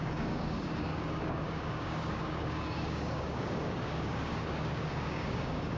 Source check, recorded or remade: remade